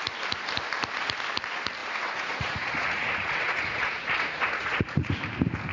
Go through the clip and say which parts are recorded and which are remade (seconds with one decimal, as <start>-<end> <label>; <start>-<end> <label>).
0.0-1.8 recorded; 1.8-5.2 remade; 5.2-5.7 recorded